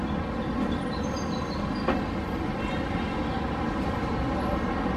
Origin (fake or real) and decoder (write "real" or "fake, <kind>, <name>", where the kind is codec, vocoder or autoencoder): real